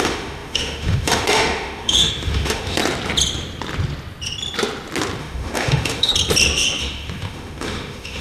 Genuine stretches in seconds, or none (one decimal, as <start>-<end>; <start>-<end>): 2.8-5.2; 6.1-6.8